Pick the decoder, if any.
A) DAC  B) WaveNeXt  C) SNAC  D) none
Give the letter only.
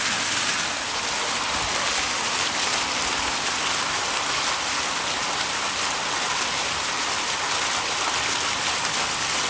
D